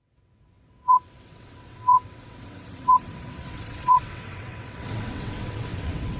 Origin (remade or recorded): remade